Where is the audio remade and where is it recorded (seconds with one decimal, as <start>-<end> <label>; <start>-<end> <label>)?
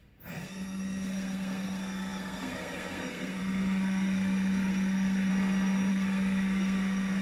0.0-5.3 remade; 5.3-5.9 recorded; 5.9-7.2 remade